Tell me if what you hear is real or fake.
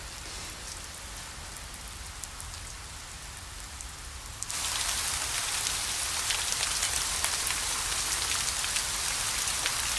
real